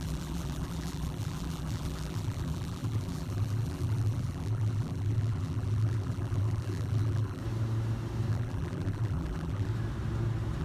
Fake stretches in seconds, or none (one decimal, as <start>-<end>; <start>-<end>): 0.0-7.4; 8.3-9.7